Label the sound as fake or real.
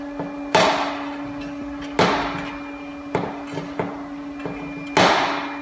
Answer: real